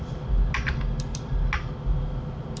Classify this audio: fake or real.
real